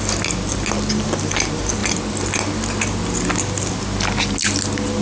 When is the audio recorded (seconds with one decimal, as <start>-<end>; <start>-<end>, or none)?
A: 0.0-5.0